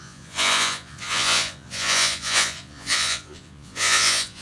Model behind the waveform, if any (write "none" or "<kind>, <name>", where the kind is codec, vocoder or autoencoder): vocoder, Vocos